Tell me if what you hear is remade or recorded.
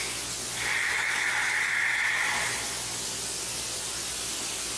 recorded